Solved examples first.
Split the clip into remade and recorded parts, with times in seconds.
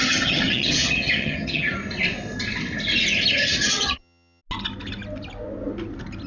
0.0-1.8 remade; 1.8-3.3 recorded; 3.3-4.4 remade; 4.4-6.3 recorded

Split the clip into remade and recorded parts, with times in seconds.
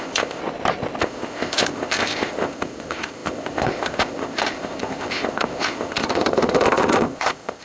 0.0-0.4 remade; 0.4-1.0 recorded; 1.0-7.6 remade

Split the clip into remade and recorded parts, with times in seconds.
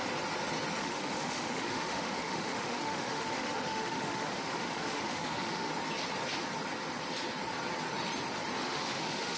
0.0-0.8 recorded; 0.8-5.7 remade; 5.7-8.6 recorded; 8.6-9.4 remade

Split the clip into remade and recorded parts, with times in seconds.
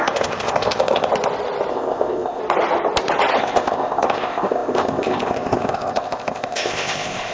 0.0-1.1 remade; 1.1-1.7 recorded; 1.7-2.4 remade; 2.4-3.4 recorded; 3.4-7.3 remade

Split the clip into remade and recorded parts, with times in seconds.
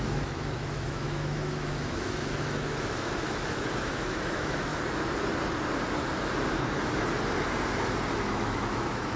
0.0-4.7 remade; 4.7-8.3 recorded; 8.3-9.2 remade